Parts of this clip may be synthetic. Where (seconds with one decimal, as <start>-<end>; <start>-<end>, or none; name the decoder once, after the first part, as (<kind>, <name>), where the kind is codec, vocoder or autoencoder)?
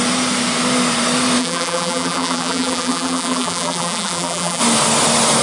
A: 1.4-4.6 (vocoder, BigVGAN v2)